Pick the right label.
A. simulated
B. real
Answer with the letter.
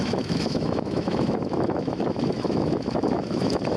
A